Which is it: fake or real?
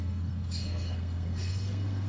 fake